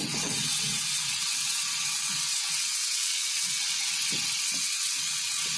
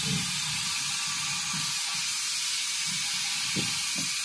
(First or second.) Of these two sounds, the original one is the second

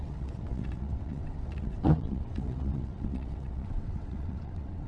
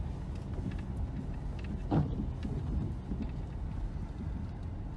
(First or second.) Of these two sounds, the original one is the second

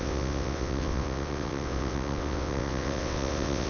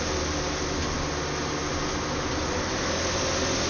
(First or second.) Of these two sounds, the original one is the second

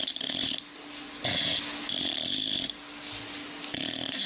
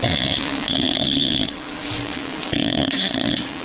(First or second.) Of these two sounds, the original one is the first